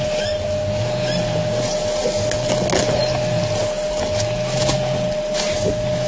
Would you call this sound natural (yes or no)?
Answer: yes